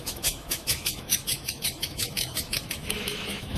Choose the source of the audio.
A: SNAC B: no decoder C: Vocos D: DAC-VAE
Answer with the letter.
D